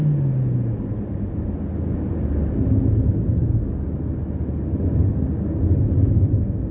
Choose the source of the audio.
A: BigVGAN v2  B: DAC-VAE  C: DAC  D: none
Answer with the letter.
D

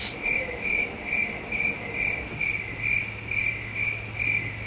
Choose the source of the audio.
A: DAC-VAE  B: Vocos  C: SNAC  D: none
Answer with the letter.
D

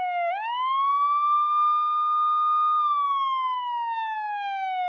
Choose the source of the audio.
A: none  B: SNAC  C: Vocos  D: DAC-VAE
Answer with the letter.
D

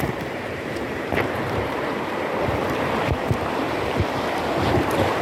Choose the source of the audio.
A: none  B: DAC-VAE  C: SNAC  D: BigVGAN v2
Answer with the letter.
D